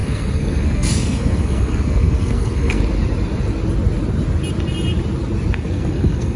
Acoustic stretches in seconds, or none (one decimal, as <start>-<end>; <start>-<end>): 2.8-5.5